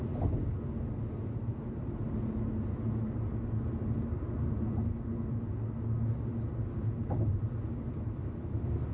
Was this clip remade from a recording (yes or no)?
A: no